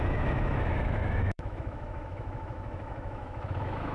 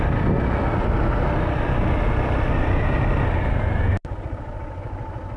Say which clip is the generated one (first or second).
first